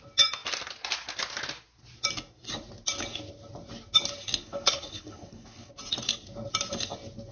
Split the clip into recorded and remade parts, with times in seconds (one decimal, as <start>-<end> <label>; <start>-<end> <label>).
0.0-4.4 recorded; 4.4-5.7 remade; 5.7-7.3 recorded